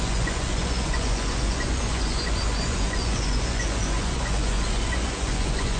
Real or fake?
fake